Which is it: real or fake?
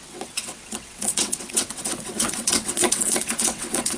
fake